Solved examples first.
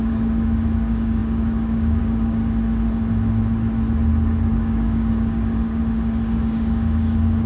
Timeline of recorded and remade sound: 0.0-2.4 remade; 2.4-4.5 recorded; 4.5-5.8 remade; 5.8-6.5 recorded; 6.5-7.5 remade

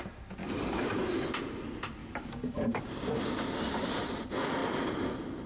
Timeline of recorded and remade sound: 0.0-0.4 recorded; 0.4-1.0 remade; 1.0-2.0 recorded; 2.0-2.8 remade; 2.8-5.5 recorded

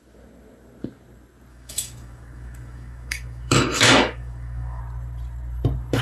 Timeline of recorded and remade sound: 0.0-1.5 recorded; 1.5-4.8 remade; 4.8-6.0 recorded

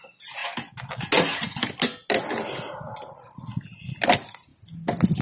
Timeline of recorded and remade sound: 0.0-5.2 recorded